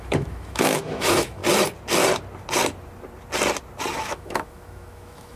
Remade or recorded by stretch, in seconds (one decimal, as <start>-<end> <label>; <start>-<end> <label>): 0.0-1.4 remade; 1.4-3.9 recorded; 3.9-5.4 remade